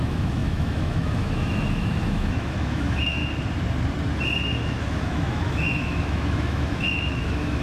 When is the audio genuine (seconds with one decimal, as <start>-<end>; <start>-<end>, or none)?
3.2-4.8